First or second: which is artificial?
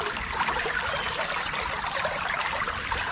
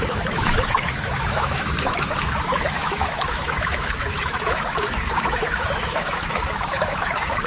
second